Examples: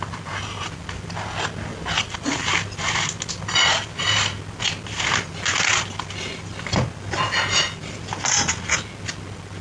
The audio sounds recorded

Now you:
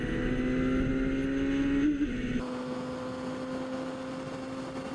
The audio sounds recorded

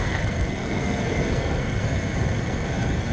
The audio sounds remade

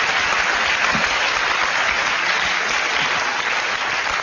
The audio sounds recorded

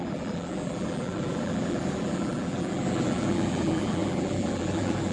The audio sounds remade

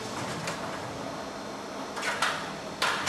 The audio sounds recorded